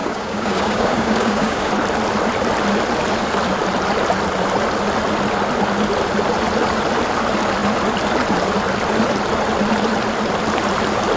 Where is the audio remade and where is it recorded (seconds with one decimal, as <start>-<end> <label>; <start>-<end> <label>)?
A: 0.0-1.7 remade; 1.7-11.2 recorded